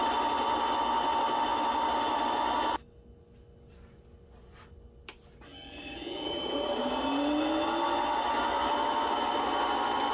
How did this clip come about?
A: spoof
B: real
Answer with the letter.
B